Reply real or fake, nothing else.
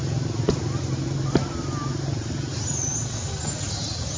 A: real